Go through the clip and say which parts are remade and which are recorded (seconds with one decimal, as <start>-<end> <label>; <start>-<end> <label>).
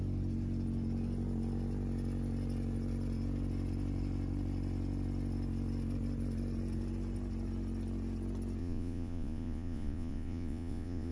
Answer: 0.0-8.6 recorded; 8.6-11.1 remade